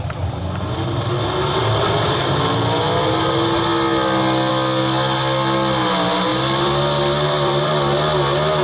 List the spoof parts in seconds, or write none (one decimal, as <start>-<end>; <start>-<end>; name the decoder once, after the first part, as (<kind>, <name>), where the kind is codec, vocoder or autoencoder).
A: 6.3-7.7 (vocoder, BigVGAN v2)